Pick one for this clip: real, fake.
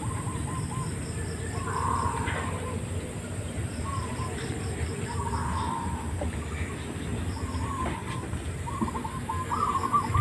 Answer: real